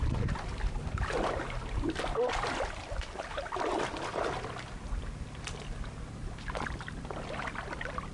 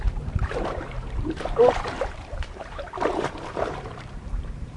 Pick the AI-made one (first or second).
second